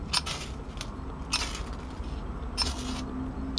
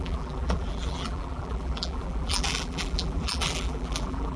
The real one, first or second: first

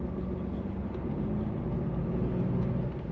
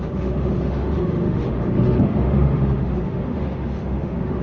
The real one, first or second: first